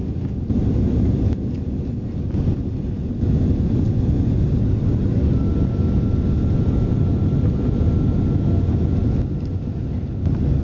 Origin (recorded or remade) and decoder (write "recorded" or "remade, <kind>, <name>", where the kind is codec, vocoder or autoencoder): recorded